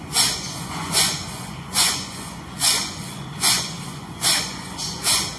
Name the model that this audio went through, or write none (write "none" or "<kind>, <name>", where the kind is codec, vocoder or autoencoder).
vocoder, Vocos